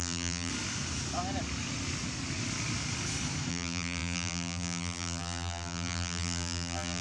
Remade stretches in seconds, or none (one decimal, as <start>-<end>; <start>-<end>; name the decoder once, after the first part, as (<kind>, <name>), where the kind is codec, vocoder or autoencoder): 0.0-0.5 (vocoder, BigVGAN v2); 3.5-7.0